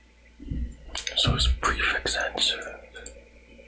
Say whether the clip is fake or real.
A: real